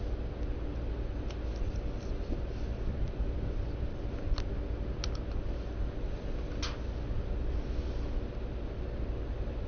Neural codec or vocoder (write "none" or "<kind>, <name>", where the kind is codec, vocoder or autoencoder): none